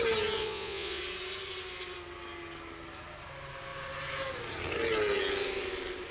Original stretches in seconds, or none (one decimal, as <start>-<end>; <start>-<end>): 0.0-0.4; 1.0-6.1